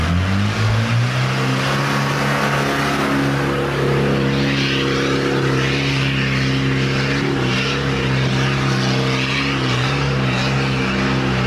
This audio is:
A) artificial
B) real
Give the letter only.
B